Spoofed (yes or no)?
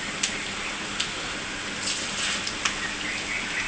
no